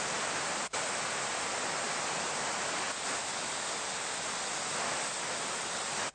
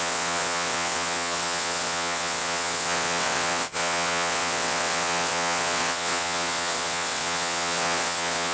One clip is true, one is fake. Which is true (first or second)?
first